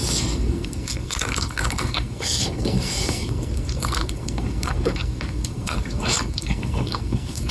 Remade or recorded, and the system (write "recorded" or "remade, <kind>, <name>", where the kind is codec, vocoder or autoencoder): remade, codec, SNAC